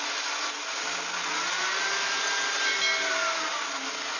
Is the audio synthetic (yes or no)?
no